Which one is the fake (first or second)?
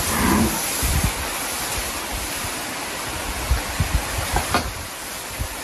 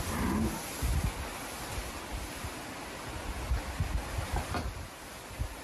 first